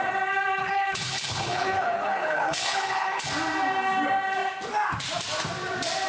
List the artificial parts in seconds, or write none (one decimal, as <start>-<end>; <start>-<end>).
0.6-3.3